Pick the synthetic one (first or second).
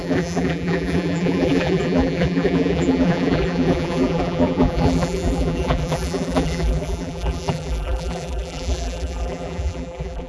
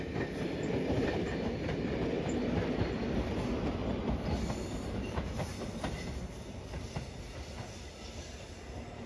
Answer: first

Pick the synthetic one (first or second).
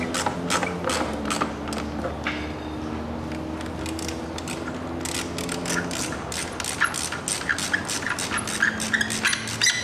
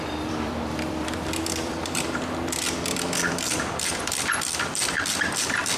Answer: second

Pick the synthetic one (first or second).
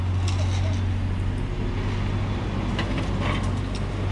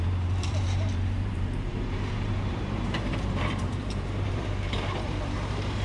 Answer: second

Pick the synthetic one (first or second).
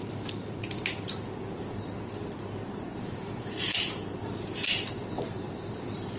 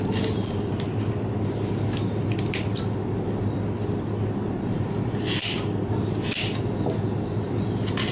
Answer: first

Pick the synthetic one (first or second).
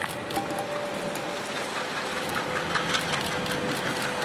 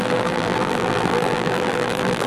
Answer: second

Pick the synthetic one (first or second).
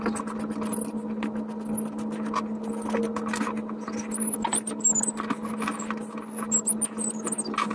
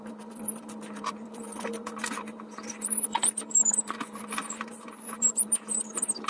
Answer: second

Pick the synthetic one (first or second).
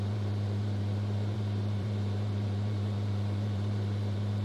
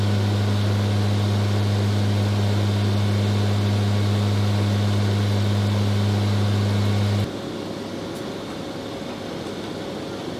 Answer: first